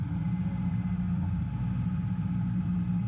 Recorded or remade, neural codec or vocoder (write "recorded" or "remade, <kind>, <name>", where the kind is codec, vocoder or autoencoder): recorded